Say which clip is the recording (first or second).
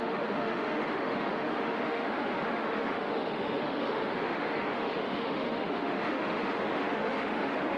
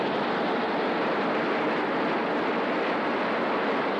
second